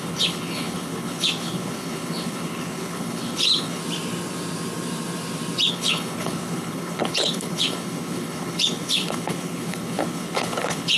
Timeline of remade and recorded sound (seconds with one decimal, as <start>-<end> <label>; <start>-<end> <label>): 0.0-3.8 remade; 3.8-5.7 recorded; 5.7-11.0 remade